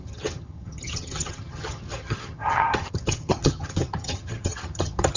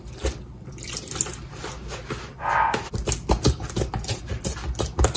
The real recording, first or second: second